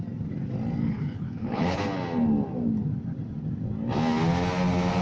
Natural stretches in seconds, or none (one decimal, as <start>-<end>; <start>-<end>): 0.0-0.8; 1.8-5.0